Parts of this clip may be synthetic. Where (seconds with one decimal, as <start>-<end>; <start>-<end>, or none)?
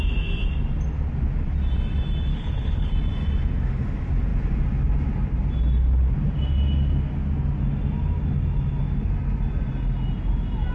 2.3-2.9